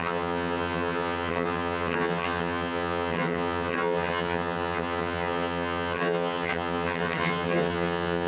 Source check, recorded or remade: remade